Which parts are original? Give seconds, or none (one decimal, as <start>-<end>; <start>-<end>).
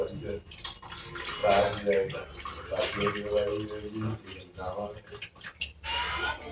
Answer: 0.0-6.5